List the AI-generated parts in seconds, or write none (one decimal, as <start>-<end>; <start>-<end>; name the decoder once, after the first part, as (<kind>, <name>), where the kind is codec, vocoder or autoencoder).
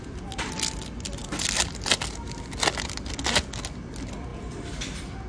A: none